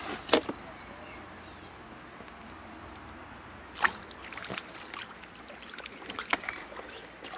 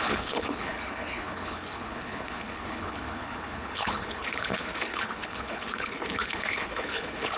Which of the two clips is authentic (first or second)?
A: first